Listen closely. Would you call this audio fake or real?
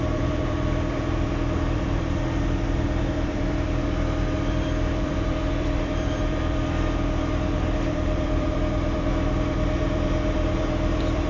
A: fake